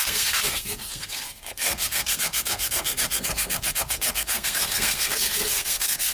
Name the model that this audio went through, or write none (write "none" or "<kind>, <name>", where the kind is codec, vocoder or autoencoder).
codec, SNAC